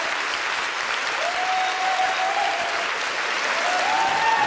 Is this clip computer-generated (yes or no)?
no